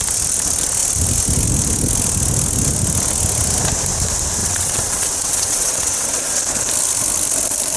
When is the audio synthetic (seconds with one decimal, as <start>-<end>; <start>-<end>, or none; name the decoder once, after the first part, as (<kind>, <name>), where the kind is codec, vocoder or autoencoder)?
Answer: 4.4-6.4 (vocoder, WaveNeXt)